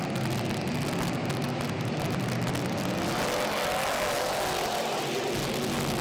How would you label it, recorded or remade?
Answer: recorded